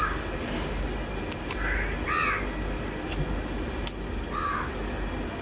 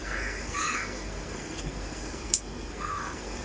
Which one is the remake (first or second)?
second